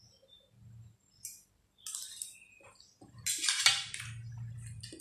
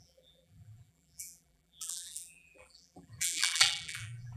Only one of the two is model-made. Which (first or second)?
second